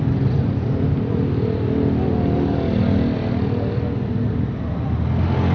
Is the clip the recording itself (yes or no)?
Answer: yes